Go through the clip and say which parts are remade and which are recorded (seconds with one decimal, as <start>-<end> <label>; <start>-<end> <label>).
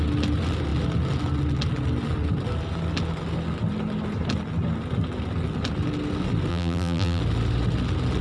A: 0.0-6.5 recorded; 6.5-7.2 remade; 7.2-8.2 recorded